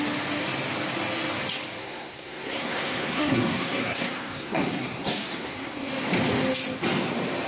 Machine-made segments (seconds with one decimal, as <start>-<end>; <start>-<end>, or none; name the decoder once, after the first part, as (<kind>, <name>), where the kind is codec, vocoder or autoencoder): 1.8-5.9 (codec, SNAC)